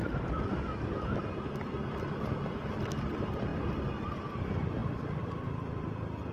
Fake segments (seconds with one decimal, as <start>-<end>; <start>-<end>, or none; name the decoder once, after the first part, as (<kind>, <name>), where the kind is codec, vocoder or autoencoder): none